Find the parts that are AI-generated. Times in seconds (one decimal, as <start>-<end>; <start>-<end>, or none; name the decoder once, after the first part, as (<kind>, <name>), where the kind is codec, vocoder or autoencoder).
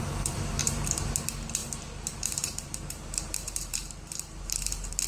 0.6-1.2 (vocoder, BigVGAN v2); 1.6-5.1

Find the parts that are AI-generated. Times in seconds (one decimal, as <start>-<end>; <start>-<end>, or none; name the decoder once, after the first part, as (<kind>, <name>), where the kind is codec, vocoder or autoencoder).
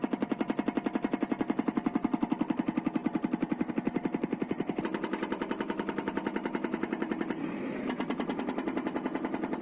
none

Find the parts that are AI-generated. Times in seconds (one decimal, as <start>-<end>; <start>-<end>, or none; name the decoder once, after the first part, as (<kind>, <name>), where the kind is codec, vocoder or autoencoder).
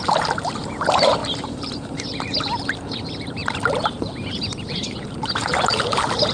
0.0-3.4 (vocoder, BigVGAN v2); 4.0-6.3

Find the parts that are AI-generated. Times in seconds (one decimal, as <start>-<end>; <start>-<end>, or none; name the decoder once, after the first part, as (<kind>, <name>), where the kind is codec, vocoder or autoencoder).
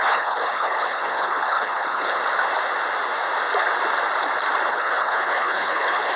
0.0-2.2 (codec, HILCodec); 4.7-6.2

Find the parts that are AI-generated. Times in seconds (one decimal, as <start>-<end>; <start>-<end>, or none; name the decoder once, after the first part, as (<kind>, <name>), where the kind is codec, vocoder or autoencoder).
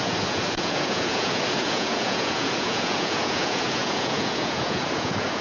0.0-5.4 (vocoder, Vocos)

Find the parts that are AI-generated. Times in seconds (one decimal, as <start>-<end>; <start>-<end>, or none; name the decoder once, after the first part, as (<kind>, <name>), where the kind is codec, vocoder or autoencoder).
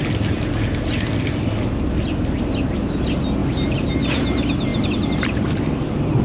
3.4-3.9 (vocoder, BigVGAN v2); 4.7-5.6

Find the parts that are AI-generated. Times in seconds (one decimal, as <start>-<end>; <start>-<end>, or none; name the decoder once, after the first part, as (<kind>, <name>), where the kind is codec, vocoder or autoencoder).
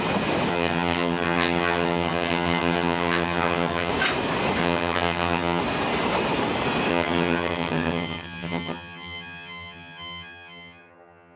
0.5-3.9 (vocoder, HiFi-GAN); 4.6-5.6; 6.9-11.4